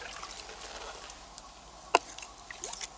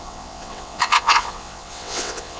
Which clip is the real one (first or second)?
first